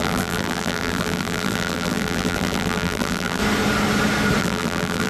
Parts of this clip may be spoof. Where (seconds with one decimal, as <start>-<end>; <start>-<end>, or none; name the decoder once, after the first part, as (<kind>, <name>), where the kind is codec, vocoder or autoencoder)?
0.0-3.4 (vocoder, BigVGAN v2); 4.4-5.1